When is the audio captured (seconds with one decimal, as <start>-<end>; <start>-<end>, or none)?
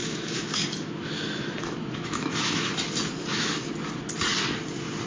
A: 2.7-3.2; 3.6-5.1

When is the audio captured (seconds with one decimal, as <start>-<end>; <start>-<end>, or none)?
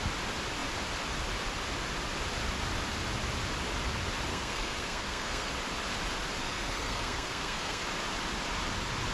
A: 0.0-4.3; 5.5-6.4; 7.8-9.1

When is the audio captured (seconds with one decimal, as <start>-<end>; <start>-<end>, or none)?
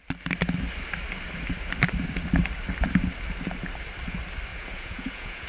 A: 0.0-4.5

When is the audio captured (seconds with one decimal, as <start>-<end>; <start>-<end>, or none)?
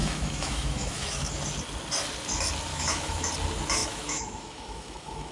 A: 1.3-2.7; 3.3-3.8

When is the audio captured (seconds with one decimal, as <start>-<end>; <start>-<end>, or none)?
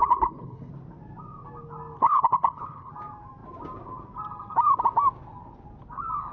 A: 0.7-2.0; 2.9-6.3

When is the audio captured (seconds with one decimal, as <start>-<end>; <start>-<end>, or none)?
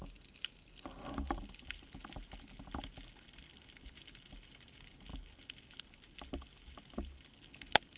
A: 0.0-8.0